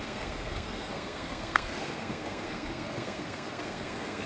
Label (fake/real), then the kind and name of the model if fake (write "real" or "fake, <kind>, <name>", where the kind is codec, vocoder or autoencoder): fake, codec, SNAC